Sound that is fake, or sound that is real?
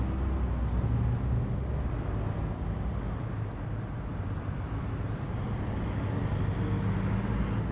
real